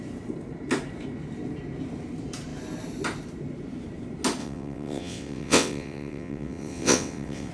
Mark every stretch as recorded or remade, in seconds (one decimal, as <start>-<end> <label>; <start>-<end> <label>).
0.0-4.4 recorded; 4.4-7.5 remade